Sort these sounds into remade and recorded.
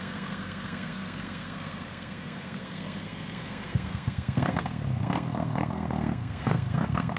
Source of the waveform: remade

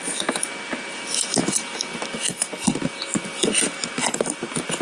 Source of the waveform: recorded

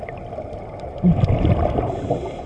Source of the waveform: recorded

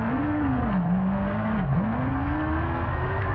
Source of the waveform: remade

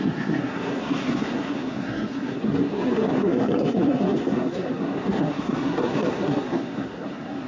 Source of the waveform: remade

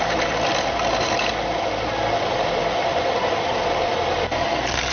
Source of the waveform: recorded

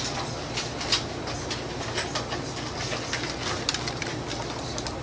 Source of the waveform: recorded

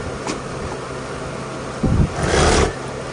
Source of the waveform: recorded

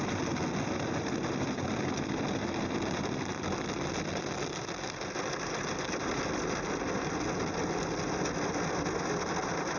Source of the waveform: recorded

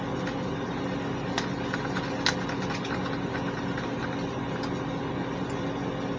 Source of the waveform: recorded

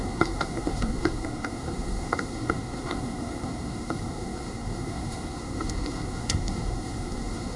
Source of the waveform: remade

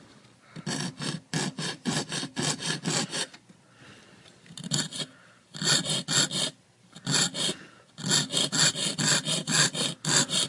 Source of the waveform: recorded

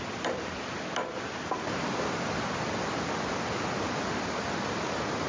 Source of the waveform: recorded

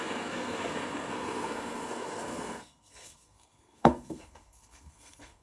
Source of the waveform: remade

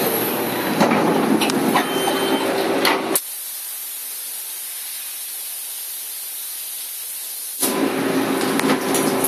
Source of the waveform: recorded